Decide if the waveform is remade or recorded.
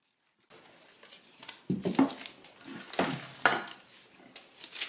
recorded